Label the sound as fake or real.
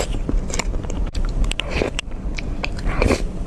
fake